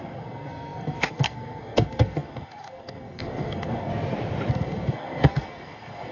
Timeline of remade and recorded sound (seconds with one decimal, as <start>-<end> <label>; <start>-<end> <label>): 0.0-3.9 remade; 3.9-4.5 recorded; 4.5-6.1 remade